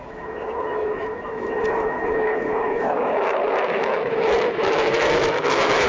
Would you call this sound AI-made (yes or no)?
yes